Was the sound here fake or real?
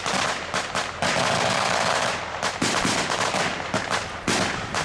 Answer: real